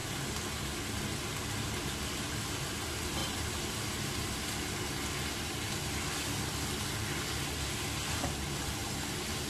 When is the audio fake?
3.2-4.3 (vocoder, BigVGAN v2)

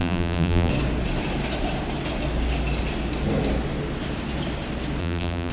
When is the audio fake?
0.0-0.7 (vocoder, BigVGAN v2); 5.0-5.5